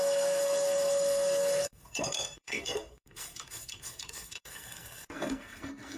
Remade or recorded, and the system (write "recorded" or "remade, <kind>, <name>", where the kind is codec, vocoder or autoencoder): remade, codec, SNAC